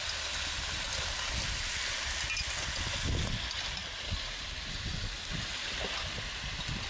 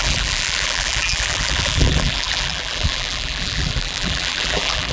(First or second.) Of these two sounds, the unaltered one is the first